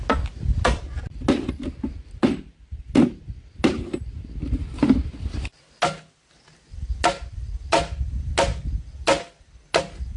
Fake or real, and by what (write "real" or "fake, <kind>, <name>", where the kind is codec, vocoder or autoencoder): real